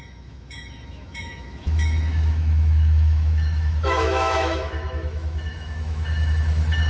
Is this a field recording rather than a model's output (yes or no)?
no